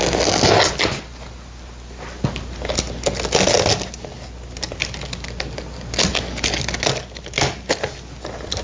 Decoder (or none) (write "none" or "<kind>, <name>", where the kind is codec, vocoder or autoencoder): none